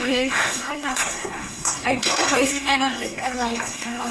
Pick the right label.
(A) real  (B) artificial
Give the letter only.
B